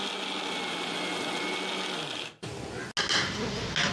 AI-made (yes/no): no